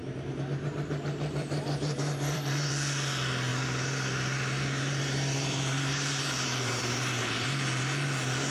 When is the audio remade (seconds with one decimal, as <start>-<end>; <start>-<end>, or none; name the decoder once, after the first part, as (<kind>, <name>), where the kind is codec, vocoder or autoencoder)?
0.0-2.7 (vocoder, BigVGAN v2); 3.5-7.5